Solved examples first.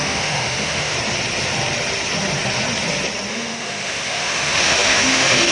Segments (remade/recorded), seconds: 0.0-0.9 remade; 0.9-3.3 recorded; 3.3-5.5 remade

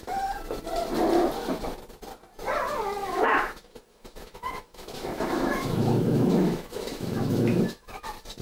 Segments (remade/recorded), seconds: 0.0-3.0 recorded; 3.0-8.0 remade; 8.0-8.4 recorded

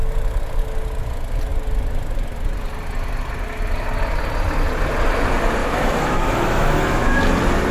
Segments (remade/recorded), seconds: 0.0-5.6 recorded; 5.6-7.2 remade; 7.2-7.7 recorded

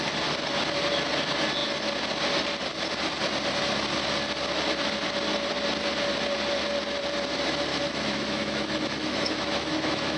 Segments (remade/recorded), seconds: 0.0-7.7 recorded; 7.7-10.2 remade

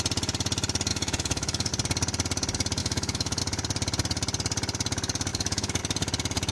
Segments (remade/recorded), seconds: 0.0-0.9 recorded; 0.9-1.7 remade; 1.7-2.8 recorded; 2.8-3.4 remade; 3.4-5.3 recorded; 5.3-5.8 remade; 5.8-6.5 recorded

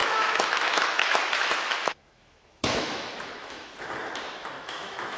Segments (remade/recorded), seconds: 0.0-3.7 remade; 3.7-4.6 recorded; 4.6-5.2 remade

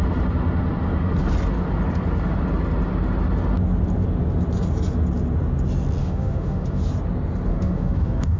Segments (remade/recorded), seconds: 0.0-6.0 recorded; 6.0-6.8 remade; 6.8-7.5 recorded; 7.5-8.4 remade